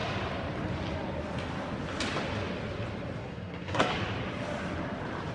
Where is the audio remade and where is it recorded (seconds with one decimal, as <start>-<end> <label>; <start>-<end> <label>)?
0.0-3.2 recorded; 3.2-3.9 remade; 3.9-5.3 recorded

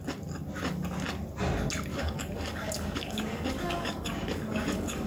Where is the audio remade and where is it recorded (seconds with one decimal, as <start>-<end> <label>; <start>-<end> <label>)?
0.0-1.9 recorded; 1.9-5.1 remade

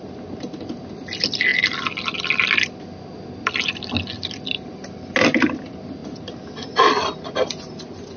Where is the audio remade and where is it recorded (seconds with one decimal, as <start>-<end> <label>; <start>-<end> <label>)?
0.0-8.2 recorded

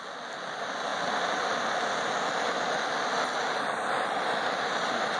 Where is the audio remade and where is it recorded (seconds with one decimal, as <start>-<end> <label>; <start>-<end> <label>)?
0.0-5.2 recorded

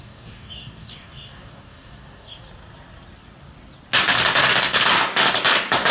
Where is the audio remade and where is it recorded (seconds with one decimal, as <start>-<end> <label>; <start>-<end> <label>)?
0.0-2.4 remade; 2.4-5.9 recorded

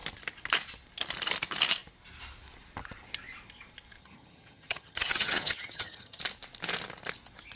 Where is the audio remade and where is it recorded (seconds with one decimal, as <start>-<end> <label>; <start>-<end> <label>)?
0.0-4.0 recorded; 4.0-6.2 remade; 6.2-7.6 recorded

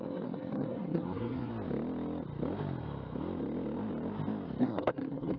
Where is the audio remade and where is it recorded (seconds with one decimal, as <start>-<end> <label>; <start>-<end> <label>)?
0.0-1.5 remade; 1.5-4.6 recorded; 4.6-5.4 remade